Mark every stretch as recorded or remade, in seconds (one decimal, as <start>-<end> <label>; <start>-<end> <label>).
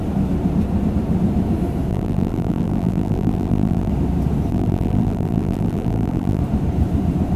0.0-1.9 recorded; 1.9-3.9 remade; 3.9-4.5 recorded; 4.5-6.4 remade; 6.4-7.4 recorded